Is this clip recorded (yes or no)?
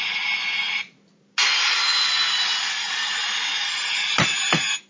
yes